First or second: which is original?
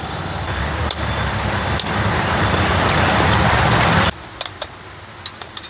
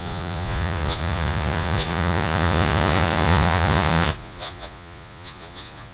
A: first